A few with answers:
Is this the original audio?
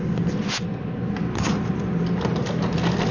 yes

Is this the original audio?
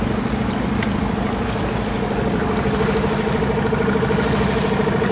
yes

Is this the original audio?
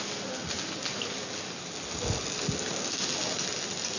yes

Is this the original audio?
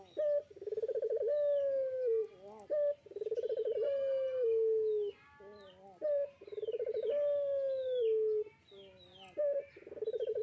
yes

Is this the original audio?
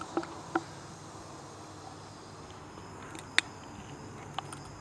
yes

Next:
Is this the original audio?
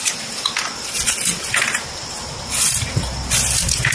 no